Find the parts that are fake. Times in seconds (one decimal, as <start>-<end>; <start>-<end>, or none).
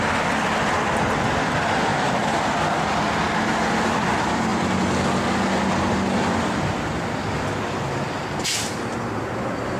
none